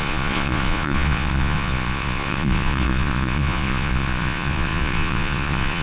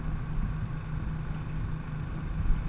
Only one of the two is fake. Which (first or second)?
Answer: first